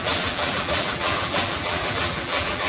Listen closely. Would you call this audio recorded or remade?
remade